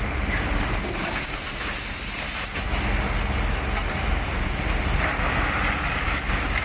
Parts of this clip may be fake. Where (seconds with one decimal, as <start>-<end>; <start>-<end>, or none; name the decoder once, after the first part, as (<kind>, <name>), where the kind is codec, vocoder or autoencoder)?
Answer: 0.0-2.7 (vocoder, BigVGAN v2); 3.9-6.6